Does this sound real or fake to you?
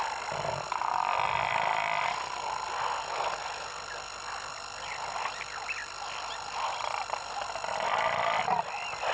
real